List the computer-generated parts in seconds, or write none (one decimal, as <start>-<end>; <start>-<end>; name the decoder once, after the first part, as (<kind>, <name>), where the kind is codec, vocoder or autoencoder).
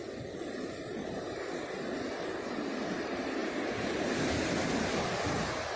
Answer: none